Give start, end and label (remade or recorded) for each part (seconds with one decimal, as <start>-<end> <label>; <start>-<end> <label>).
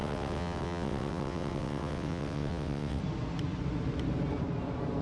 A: 0.0-3.0 remade; 3.0-5.0 recorded